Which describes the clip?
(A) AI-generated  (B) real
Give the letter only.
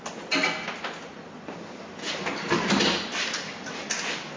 B